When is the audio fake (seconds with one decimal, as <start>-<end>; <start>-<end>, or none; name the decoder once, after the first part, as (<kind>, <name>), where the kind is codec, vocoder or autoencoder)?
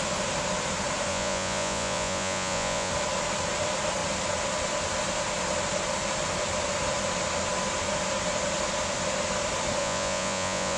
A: 1.1-2.9 (vocoder, Vocos); 9.8-10.8